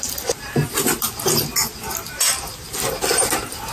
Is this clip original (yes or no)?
yes